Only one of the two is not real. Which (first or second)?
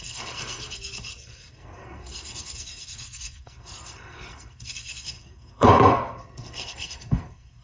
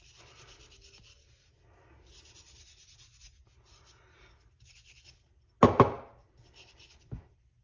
first